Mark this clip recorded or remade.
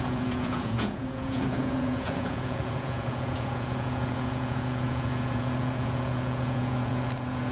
remade